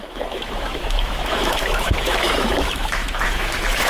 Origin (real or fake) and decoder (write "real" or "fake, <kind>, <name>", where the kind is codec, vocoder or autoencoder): fake, autoencoder, DAC-VAE